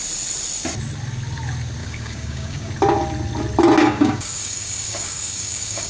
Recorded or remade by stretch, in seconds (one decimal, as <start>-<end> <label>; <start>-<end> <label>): 0.0-1.8 recorded; 1.8-2.7 remade; 2.7-3.8 recorded; 3.8-5.9 remade